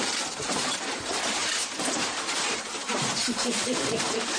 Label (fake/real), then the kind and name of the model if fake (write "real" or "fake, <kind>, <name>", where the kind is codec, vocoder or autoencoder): fake, vocoder, BigVGAN v2